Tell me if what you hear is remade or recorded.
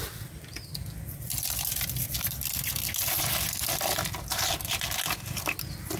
recorded